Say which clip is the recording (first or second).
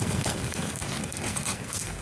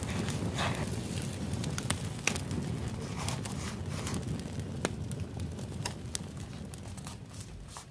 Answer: second